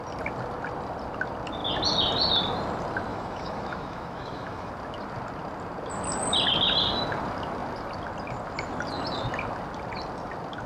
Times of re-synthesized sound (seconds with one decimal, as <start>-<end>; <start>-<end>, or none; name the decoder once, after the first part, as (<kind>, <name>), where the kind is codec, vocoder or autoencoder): 3.1-4.7 (autoencoder, DAC-VAE)